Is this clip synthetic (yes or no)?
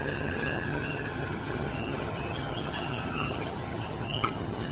yes